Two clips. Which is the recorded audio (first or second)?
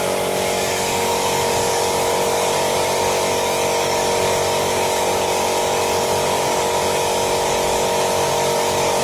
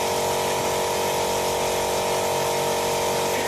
second